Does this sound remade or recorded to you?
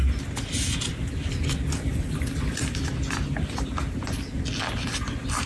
recorded